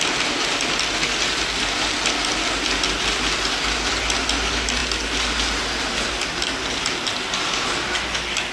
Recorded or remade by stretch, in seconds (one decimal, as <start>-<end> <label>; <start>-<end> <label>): 0.0-8.5 recorded